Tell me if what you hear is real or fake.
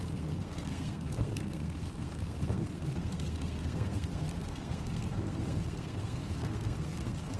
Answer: fake